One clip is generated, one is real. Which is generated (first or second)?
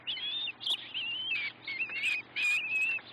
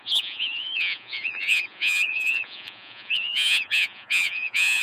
second